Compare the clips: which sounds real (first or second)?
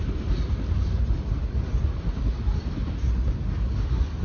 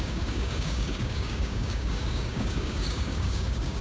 first